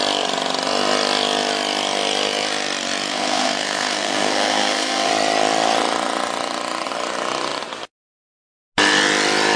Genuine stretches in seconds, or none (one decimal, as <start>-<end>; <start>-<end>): 0.0-3.1; 5.1-9.6